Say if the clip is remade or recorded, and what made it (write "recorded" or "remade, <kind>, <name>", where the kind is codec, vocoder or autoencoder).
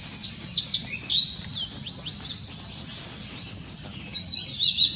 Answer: recorded